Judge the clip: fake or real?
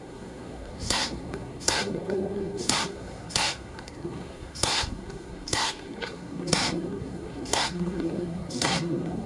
fake